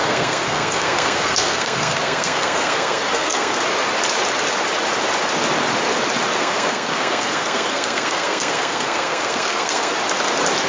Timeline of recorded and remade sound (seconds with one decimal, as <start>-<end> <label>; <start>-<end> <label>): 0.0-3.6 remade; 3.6-6.4 recorded; 6.4-9.9 remade; 9.9-10.7 recorded